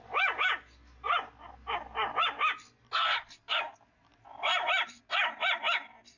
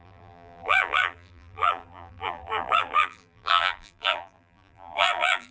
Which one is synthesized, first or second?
second